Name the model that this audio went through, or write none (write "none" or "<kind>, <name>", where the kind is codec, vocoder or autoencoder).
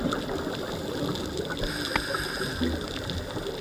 none